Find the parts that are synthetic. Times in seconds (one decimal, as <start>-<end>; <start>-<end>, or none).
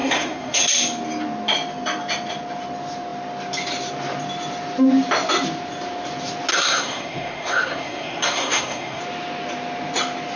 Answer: 0.0-0.6; 6.5-9.0